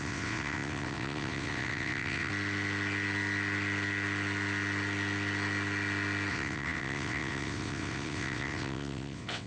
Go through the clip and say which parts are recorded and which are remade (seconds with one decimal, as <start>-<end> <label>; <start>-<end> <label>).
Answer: 0.0-2.3 remade; 2.3-6.3 recorded; 6.3-9.5 remade